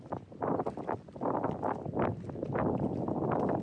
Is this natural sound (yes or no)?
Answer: yes